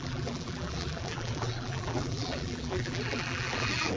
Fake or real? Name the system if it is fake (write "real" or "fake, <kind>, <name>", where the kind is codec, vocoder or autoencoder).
fake, vocoder, BigVGAN v2